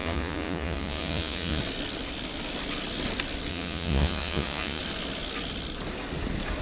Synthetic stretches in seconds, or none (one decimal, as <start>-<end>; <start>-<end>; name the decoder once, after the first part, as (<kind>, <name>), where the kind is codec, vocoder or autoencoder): 0.0-1.6 (vocoder, Vocos); 3.5-4.8